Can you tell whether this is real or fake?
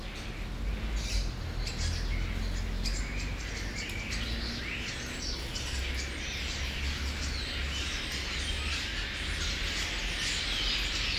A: real